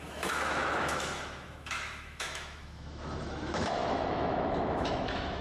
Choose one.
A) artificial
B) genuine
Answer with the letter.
A